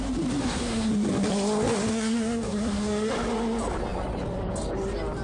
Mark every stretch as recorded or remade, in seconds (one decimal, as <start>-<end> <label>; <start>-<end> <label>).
0.0-0.4 recorded; 0.4-0.9 remade; 0.9-1.9 recorded; 1.9-3.1 remade; 3.1-5.2 recorded